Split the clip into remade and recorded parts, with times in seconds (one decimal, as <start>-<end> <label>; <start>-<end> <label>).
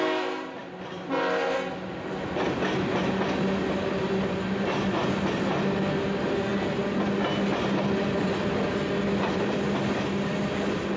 0.0-11.0 recorded